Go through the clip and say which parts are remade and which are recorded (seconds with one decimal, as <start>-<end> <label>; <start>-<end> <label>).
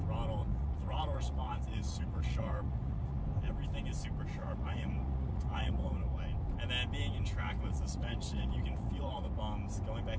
0.0-0.4 recorded; 0.4-3.2 remade; 3.2-4.4 recorded; 4.4-6.2 remade; 6.2-7.4 recorded; 7.4-9.4 remade; 9.4-10.2 recorded